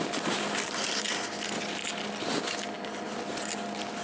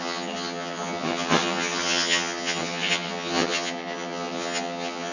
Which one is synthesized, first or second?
second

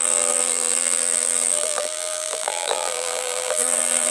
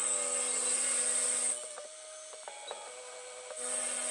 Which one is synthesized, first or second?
first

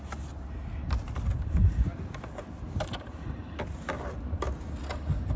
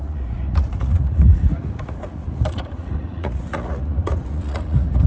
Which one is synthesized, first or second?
second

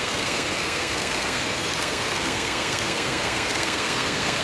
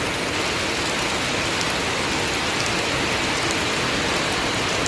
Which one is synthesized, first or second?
first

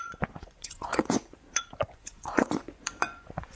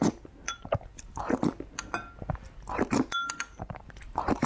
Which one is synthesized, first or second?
first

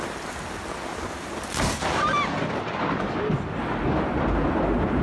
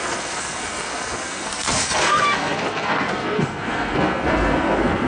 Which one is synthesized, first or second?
second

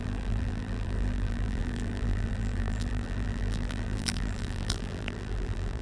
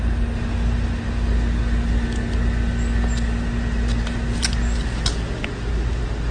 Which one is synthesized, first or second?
first